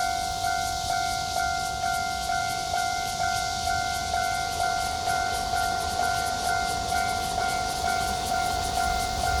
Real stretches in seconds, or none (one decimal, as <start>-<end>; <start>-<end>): 0.0-2.4